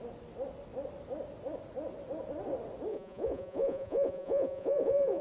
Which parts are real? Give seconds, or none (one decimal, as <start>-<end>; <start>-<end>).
0.0-2.9